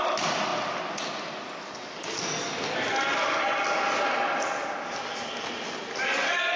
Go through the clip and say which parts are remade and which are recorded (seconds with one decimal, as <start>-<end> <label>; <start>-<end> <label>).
0.0-6.6 recorded